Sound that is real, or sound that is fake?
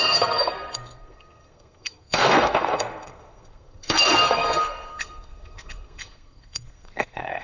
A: fake